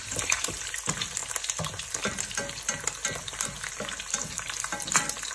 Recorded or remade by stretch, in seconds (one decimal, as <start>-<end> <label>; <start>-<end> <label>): 0.0-1.2 remade; 1.2-3.7 recorded; 3.7-5.3 remade